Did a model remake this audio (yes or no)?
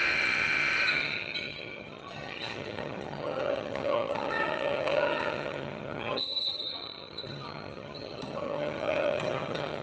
yes